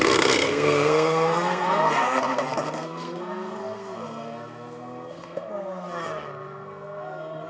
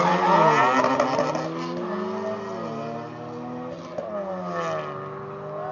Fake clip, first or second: first